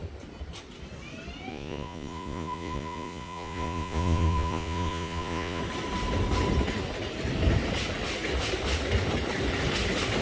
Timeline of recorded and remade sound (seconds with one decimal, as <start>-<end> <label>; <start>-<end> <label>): 0.0-1.5 recorded; 1.5-5.6 remade; 5.6-10.2 recorded